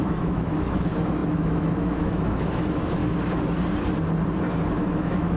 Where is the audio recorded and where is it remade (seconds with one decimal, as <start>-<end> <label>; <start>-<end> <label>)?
0.0-3.0 remade; 3.0-4.7 recorded; 4.7-5.4 remade